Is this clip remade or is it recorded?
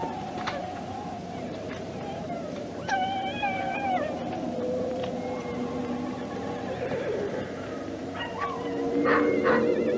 remade